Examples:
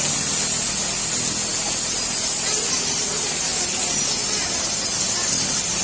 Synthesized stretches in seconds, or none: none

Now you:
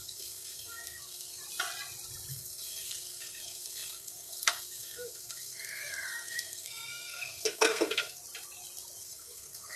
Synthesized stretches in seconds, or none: 0.0-1.4 (codec, SNAC); 2.3-8.2; 9.0-9.8